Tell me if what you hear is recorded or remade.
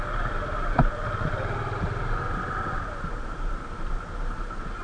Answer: recorded